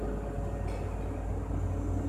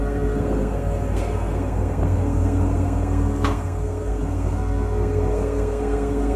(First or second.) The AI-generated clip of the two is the second